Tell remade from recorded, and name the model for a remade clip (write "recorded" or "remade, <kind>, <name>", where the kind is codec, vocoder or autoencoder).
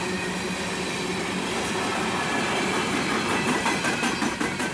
recorded